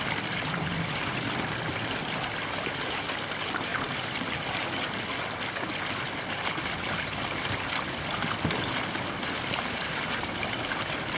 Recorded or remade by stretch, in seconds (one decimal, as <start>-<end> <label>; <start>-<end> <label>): 0.0-11.2 recorded